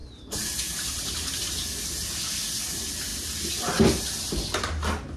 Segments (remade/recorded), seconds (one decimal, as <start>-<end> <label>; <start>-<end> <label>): 0.0-1.5 remade; 1.5-5.2 recorded